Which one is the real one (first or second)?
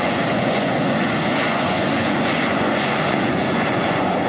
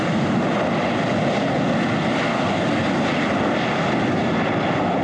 second